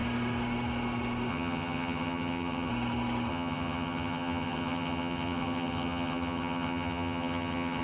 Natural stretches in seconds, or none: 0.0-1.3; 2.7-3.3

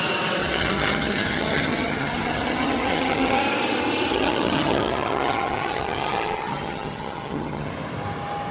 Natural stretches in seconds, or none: 0.0-0.4; 3.4-4.1; 7.7-8.5

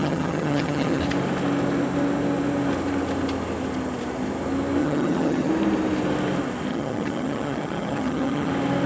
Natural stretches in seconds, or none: 1.0-4.8; 5.5-6.7; 8.5-8.9

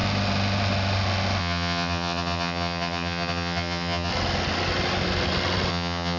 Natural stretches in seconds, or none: 0.0-1.4; 4.1-5.7

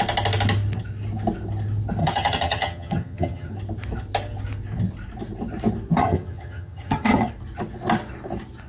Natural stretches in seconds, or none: 0.0-2.0; 3.5-6.0; 7.3-8.7

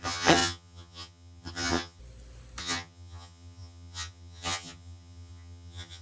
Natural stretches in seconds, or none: 2.0-2.6

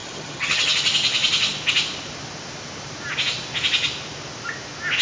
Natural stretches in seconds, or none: 0.8-5.0

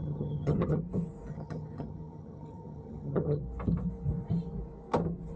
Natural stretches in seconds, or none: 0.8-1.3; 3.4-5.4